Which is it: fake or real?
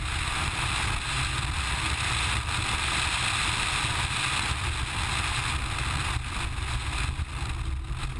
real